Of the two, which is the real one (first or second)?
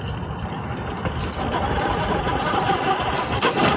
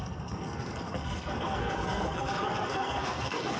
first